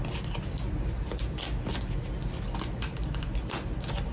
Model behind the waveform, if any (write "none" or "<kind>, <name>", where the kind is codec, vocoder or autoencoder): none